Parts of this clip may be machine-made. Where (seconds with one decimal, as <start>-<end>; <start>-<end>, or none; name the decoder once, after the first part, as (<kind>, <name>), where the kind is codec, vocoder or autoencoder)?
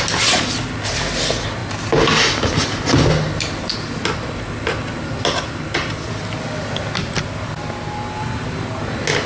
none